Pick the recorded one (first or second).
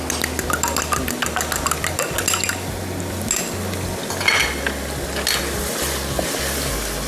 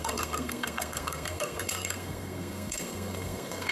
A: first